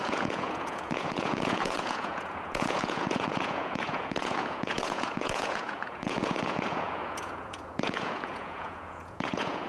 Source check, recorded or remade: remade